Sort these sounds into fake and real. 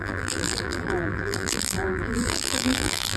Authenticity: fake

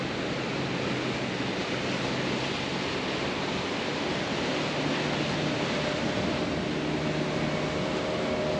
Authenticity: real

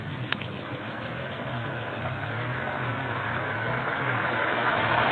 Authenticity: fake